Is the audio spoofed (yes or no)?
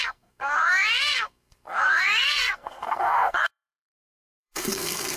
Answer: yes